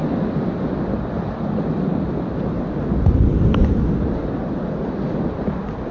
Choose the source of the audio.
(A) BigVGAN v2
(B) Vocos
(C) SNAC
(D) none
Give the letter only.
D